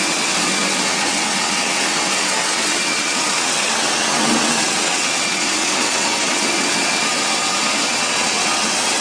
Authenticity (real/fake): fake